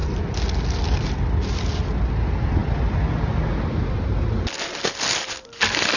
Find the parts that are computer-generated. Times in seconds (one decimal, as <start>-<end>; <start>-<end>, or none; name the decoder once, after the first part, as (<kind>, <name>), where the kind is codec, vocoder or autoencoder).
none